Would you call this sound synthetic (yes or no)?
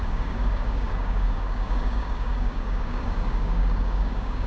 yes